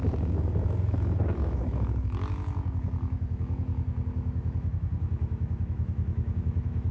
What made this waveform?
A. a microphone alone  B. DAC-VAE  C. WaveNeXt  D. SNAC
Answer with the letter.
B